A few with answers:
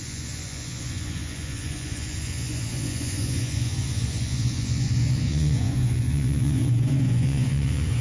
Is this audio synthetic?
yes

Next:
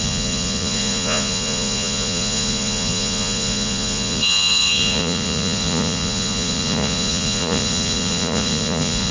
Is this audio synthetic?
yes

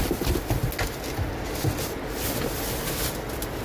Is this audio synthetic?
no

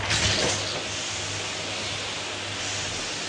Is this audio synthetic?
no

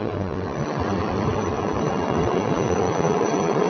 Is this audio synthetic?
yes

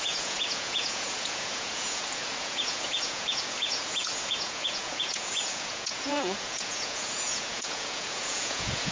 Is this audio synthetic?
yes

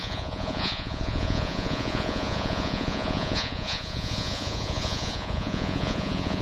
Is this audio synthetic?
yes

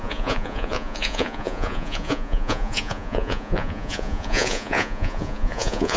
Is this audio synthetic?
yes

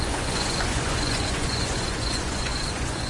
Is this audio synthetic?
yes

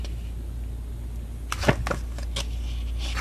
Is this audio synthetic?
no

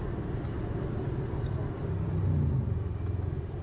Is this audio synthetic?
no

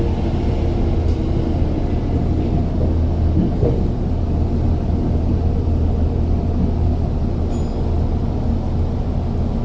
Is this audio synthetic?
no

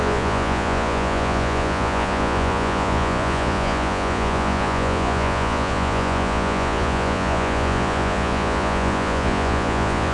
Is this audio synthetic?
yes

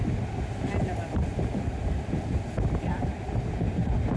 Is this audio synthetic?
no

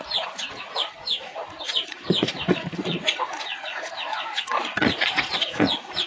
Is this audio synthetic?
yes